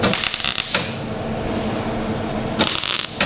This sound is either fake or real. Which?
real